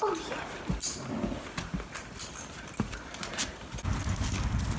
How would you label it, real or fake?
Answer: real